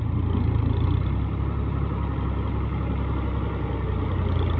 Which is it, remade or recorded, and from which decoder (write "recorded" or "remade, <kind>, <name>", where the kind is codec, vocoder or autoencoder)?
recorded